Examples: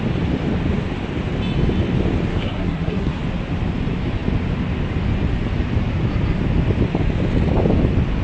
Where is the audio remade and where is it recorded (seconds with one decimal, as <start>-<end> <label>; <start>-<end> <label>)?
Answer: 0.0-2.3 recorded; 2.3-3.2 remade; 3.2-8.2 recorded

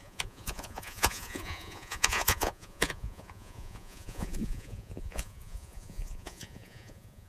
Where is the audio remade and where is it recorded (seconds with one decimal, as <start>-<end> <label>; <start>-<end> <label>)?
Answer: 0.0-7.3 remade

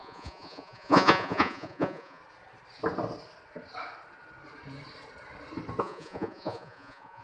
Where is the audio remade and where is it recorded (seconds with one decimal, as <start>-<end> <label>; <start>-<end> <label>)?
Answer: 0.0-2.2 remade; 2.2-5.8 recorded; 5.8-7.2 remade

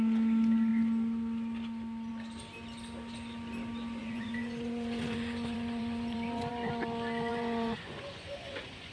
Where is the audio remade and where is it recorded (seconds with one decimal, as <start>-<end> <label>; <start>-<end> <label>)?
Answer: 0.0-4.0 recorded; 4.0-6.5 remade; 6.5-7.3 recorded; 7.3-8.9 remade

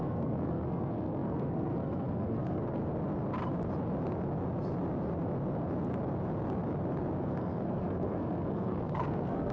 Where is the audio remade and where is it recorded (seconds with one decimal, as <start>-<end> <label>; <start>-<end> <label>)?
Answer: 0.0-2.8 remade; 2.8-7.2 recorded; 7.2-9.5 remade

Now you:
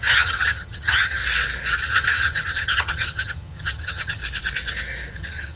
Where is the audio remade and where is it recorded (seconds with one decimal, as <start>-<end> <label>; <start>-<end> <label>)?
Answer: 0.0-1.2 remade; 1.2-1.8 recorded; 1.8-4.2 remade; 4.2-5.1 recorded; 5.1-5.6 remade

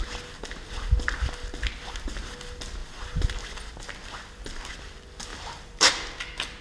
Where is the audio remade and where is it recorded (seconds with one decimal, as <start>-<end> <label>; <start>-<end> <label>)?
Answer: 0.0-5.3 recorded; 5.3-5.9 remade; 5.9-6.6 recorded